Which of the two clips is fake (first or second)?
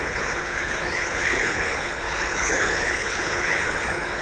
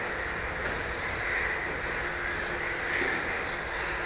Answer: first